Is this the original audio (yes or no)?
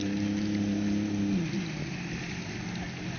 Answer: yes